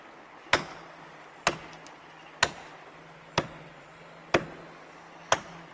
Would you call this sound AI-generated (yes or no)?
no